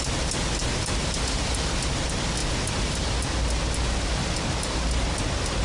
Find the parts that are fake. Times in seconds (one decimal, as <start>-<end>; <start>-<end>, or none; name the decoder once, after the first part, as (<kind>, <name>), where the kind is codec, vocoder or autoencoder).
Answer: none